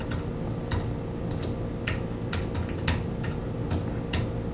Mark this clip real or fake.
real